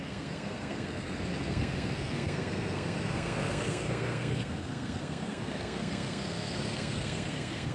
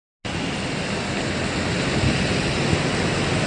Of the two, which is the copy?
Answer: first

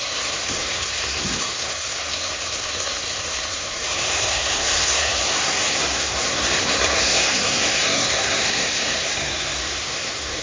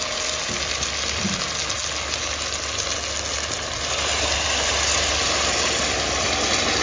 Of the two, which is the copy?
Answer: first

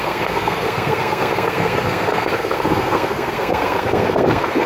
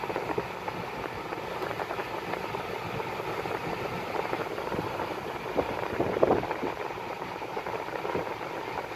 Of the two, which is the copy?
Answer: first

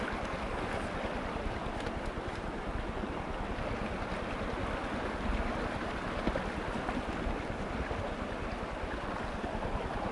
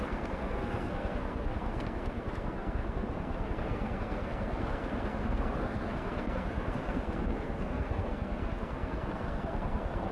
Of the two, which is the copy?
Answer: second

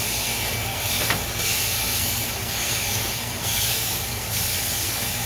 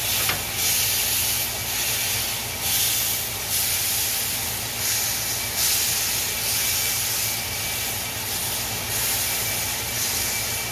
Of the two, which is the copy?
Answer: first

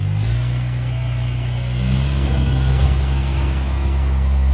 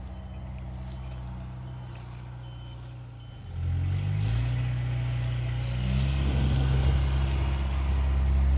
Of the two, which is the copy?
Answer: first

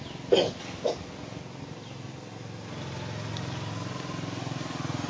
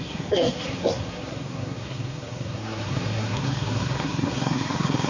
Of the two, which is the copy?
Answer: second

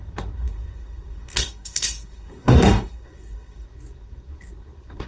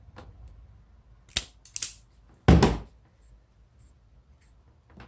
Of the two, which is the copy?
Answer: first